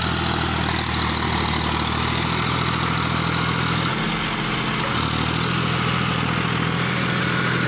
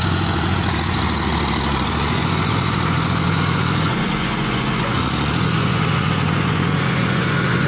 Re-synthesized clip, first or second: second